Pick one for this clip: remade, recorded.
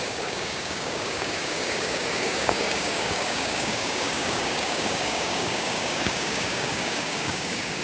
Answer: remade